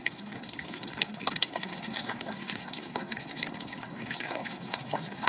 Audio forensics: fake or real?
fake